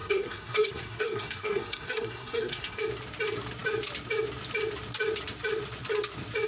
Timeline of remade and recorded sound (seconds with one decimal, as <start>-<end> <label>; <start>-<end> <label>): 0.0-2.8 remade; 2.8-6.5 recorded